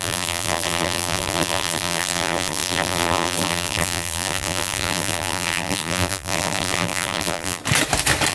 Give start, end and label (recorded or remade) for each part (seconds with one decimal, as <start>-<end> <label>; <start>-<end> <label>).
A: 0.0-7.6 remade; 7.6-8.3 recorded